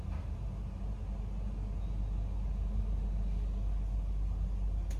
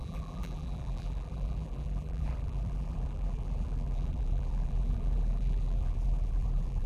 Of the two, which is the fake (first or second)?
second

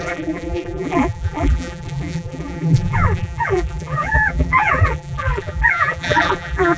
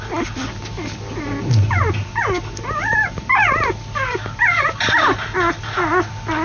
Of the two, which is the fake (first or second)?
first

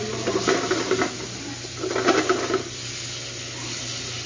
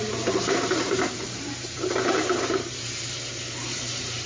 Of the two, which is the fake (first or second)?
second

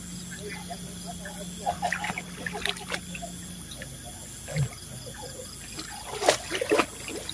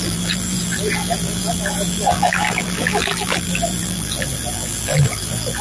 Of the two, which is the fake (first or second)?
second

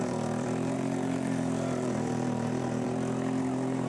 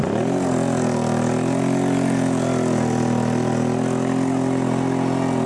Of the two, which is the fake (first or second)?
first